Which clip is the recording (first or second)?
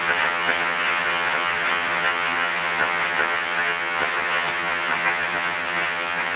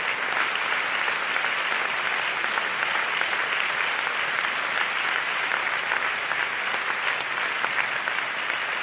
second